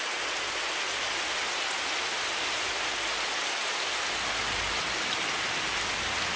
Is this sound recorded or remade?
recorded